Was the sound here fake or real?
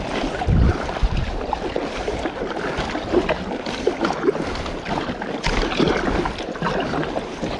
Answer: real